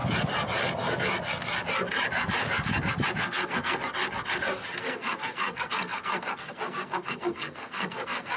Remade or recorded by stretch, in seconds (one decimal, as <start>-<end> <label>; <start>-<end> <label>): 0.0-3.2 recorded; 3.2-3.8 remade; 3.8-4.8 recorded; 4.8-8.4 remade